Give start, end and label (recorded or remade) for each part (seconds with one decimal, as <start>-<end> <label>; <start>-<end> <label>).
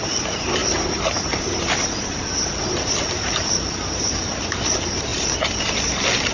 0.0-6.3 recorded